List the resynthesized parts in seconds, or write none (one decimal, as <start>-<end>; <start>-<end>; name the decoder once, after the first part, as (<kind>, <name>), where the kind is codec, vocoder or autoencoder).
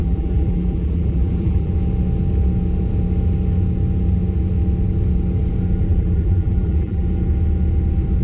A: 0.0-1.7 (vocoder, BigVGAN v2); 5.9-7.0